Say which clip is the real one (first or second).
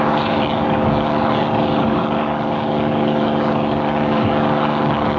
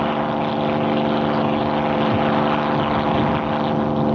second